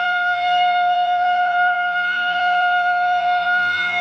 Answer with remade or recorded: remade